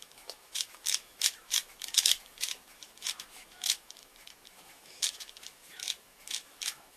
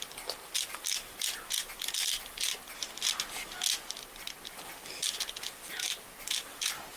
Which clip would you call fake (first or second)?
first